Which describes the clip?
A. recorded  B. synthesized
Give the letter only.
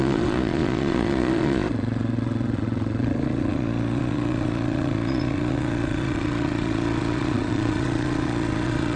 B